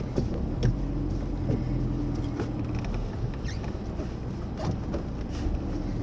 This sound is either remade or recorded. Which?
recorded